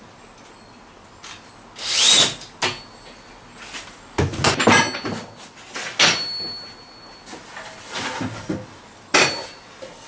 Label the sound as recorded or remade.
recorded